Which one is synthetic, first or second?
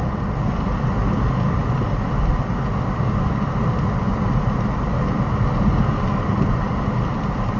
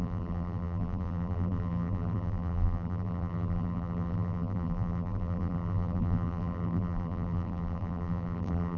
second